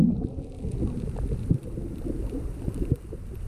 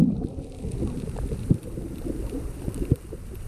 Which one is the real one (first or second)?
first